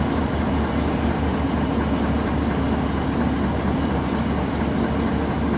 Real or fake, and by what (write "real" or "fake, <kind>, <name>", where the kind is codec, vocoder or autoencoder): real